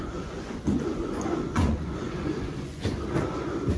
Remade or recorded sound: remade